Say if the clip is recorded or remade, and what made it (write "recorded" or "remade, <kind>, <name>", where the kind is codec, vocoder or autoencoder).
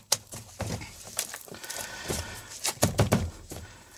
remade, vocoder, BigVGAN v2